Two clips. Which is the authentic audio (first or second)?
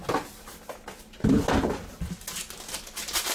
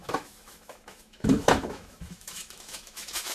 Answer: first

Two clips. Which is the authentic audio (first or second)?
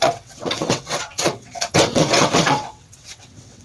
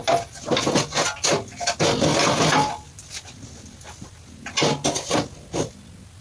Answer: second